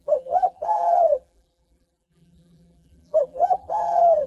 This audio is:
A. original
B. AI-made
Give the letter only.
B